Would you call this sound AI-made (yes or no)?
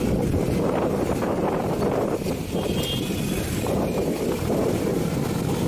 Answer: no